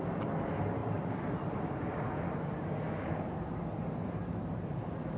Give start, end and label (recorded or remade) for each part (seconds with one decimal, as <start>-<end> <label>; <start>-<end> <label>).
0.0-0.8 recorded; 0.8-3.1 remade; 3.1-5.2 recorded